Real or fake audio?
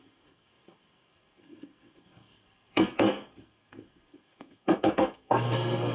fake